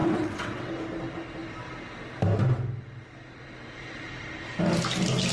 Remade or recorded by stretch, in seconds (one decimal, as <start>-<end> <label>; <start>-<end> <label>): 0.0-0.7 remade; 0.7-5.3 recorded